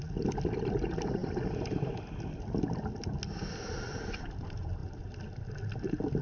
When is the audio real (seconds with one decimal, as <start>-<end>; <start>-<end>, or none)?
0.0-6.2